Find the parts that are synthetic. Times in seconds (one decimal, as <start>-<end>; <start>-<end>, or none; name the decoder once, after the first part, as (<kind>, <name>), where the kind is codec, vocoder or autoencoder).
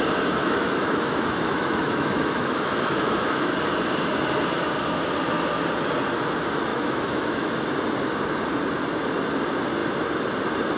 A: 0.4-3.5 (autoencoder, DAC-VAE); 6.7-7.5